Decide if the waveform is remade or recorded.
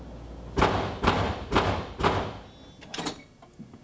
recorded